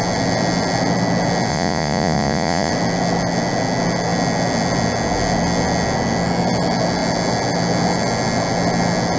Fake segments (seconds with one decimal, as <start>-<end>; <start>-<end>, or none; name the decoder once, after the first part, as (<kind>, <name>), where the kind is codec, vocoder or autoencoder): 1.5-2.7 (vocoder, Vocos)